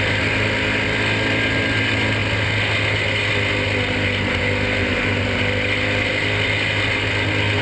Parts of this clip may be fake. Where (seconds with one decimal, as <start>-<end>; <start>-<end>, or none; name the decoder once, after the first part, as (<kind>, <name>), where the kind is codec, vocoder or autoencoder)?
4.8-5.4 (vocoder, BigVGAN v2)